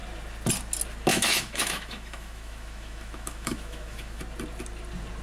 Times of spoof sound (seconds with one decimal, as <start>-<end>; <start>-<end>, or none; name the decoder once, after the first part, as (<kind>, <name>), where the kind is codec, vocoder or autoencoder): 1.1-4.2 (autoencoder, DAC-VAE)